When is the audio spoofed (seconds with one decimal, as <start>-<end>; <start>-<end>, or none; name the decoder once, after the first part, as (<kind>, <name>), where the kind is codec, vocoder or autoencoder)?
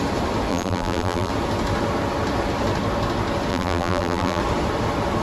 0.5-1.3 (vocoder, BigVGAN v2); 3.5-4.4